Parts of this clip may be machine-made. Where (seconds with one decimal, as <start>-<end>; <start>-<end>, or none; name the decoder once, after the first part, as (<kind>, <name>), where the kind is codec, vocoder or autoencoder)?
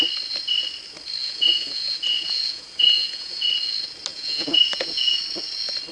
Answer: 1.2-3.4 (vocoder, Vocos); 4.1-5.2